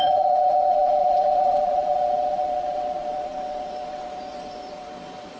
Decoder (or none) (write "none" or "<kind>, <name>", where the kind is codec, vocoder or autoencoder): vocoder, Vocos